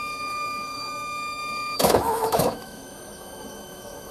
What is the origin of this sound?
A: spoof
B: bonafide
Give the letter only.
A